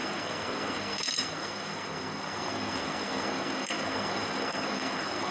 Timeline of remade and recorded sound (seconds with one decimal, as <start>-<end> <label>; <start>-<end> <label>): 0.0-5.3 remade